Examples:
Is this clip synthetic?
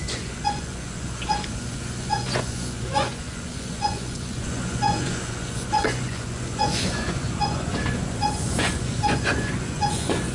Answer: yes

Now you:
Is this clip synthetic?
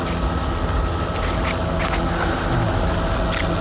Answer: no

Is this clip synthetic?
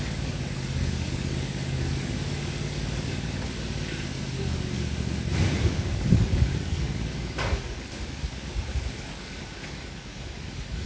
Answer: yes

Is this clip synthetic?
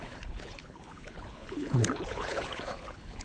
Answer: yes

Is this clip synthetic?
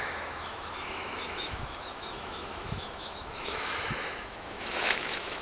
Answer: yes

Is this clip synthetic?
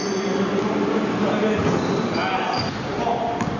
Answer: no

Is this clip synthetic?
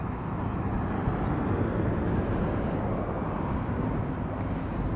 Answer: no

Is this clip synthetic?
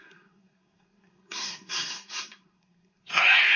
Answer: yes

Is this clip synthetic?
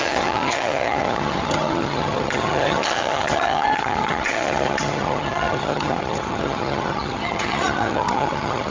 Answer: yes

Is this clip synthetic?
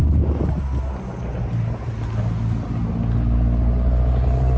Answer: no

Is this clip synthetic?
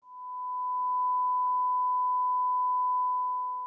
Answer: no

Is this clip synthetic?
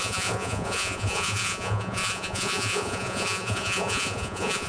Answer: yes